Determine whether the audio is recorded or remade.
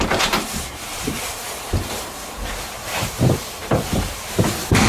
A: remade